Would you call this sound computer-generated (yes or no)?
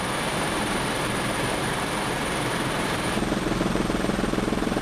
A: yes